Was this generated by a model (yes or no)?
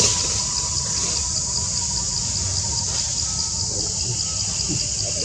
no